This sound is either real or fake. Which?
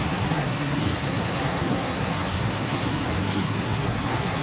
fake